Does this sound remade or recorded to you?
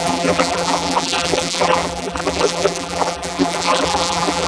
remade